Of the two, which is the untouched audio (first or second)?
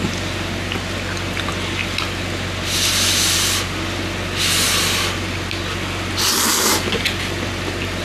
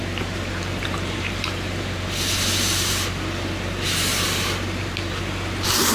first